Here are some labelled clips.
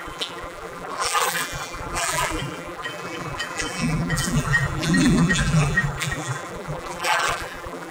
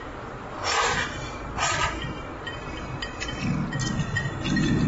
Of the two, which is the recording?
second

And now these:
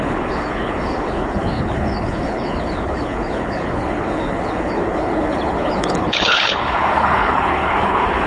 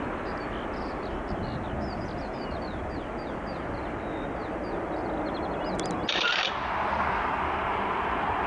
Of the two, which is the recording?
second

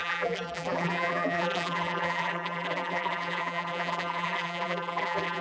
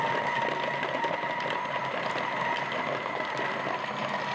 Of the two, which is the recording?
second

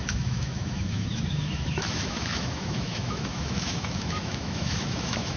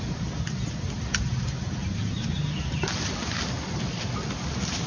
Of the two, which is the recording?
second